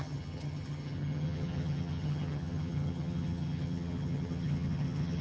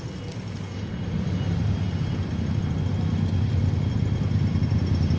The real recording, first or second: second